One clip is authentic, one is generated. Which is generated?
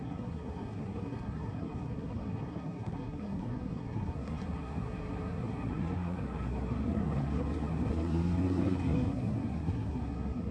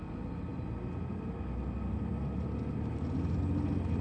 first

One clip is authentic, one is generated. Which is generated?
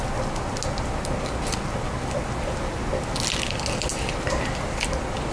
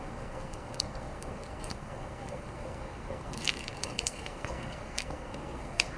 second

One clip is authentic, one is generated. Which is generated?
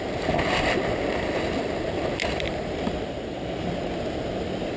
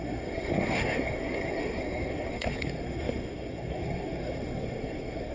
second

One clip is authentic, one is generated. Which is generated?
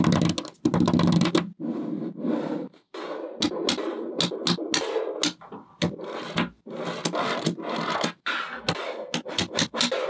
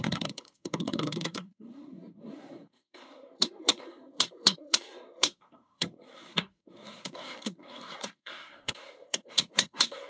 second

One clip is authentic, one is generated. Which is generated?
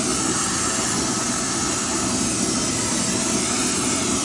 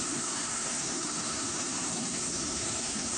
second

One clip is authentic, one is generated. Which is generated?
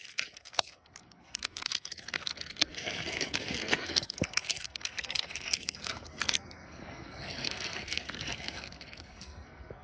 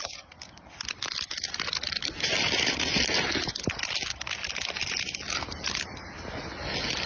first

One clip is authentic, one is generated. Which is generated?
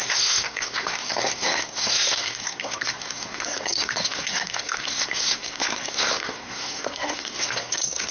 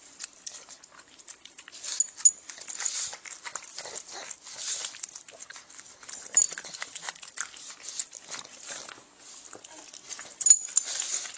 first